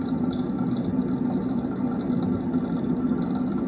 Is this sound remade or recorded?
recorded